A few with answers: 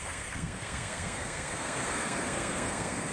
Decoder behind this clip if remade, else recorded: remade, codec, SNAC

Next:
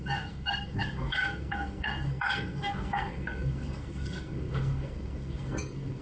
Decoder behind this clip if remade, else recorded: remade, codec, SNAC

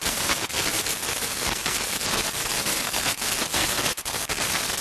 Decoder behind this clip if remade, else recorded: remade, codec, SNAC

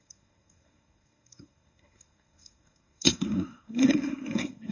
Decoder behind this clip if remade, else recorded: remade, codec, SNAC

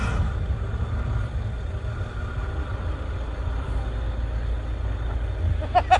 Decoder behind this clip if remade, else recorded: recorded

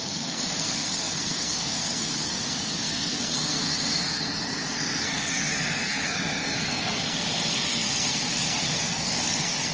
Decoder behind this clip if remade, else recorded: remade, codec, SNAC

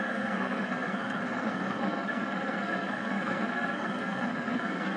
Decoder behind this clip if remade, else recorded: remade, codec, SNAC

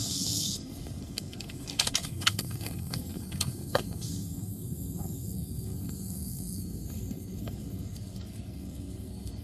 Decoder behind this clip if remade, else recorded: remade, codec, SNAC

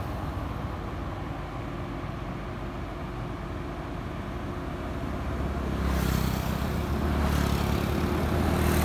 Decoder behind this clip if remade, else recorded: recorded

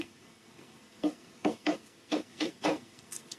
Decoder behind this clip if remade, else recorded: remade, codec, SNAC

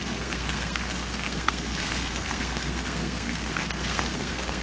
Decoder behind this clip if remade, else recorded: remade, codec, SNAC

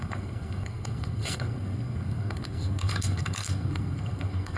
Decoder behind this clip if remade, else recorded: remade, codec, SNAC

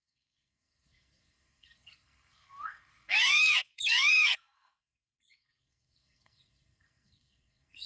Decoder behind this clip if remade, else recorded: remade, codec, SNAC